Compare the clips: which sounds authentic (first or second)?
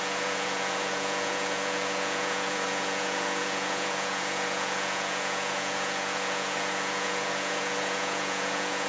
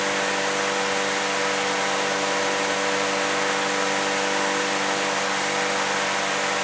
second